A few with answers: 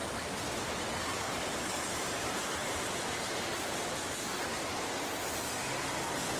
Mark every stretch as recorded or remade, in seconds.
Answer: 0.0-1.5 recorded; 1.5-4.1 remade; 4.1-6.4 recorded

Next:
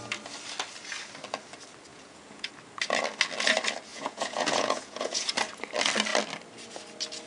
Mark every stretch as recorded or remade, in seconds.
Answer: 0.0-1.9 recorded; 1.9-2.5 remade; 2.5-3.9 recorded; 3.9-5.3 remade; 5.3-7.3 recorded